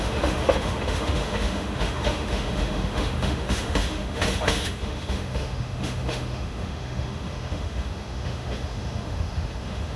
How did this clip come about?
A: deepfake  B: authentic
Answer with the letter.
A